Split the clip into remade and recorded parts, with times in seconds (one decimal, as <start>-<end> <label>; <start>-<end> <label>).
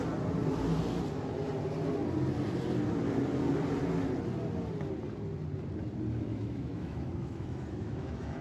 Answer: 0.0-6.3 recorded; 6.3-8.4 remade